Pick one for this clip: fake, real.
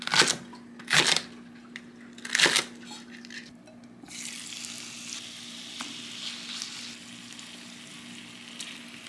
real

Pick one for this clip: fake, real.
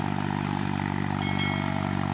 real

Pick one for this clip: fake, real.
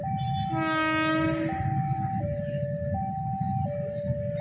real